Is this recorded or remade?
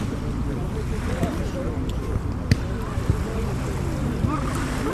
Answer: recorded